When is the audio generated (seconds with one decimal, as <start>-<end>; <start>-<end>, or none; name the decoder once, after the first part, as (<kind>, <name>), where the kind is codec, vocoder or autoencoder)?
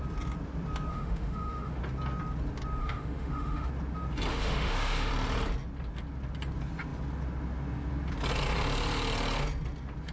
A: 0.9-1.8 (autoencoder, DAC-VAE); 2.8-3.7; 4.3-5.1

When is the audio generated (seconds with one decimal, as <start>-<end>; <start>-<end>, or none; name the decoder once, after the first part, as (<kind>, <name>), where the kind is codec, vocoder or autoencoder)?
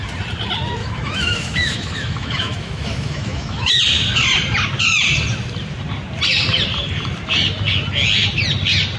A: 0.8-3.8 (autoencoder, DAC-VAE)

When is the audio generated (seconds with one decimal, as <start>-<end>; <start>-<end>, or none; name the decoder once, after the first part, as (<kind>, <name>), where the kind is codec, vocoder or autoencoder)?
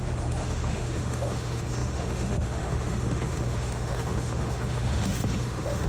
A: 0.0-5.9 (autoencoder, DAC-VAE)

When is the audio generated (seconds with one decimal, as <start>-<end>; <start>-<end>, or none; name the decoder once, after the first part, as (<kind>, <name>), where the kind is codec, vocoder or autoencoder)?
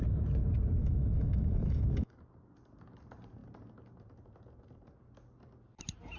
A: 0.8-2.1 (autoencoder, DAC-VAE)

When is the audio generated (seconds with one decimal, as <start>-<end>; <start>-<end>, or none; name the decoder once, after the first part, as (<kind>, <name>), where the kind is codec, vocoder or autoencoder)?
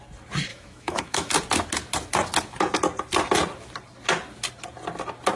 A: 0.5-1.3 (autoencoder, DAC-VAE)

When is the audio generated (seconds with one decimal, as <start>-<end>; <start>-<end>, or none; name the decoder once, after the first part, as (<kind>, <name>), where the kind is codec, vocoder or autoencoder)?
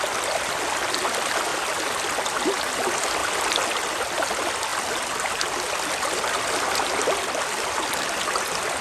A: none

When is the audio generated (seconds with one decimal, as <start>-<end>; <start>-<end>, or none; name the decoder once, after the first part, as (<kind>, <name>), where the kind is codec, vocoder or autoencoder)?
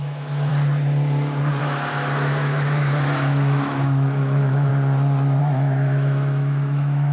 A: 0.0-0.5 (autoencoder, DAC-VAE); 1.6-4.7; 5.4-7.1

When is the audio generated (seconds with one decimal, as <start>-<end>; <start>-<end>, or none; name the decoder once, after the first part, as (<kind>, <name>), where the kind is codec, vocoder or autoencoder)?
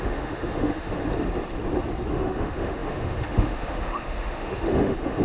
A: 0.0-1.0 (autoencoder, DAC-VAE); 2.1-5.2